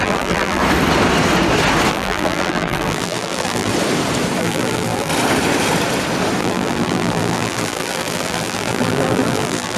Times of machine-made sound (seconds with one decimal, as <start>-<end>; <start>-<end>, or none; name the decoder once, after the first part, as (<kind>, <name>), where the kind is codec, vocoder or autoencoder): 0.0-0.6 (vocoder, BigVGAN v2); 1.9-3.7; 4.4-5.1; 6.4-9.8

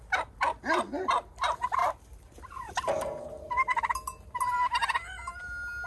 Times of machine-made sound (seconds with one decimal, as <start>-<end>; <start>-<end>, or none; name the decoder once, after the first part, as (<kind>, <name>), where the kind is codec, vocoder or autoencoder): none